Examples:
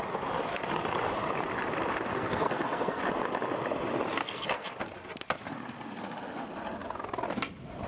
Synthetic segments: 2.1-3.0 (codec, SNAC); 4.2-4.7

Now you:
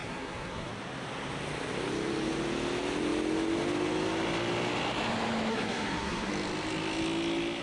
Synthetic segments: 0.0-0.7 (codec, SNAC); 5.5-6.3